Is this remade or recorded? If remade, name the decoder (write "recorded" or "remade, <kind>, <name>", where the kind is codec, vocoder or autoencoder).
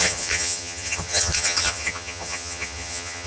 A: remade, vocoder, HiFi-GAN